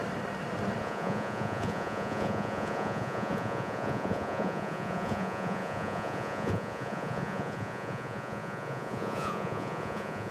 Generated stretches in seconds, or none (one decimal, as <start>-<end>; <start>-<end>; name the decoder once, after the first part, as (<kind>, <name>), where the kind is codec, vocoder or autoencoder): 0.8-10.3 (vocoder, Vocos)